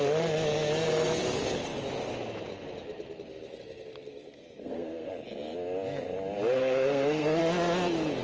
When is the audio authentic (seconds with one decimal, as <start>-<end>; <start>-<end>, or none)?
0.0-4.6; 5.1-6.6; 7.4-8.2